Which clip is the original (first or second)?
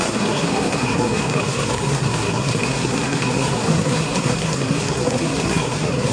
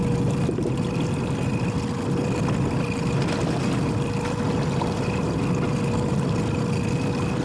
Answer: second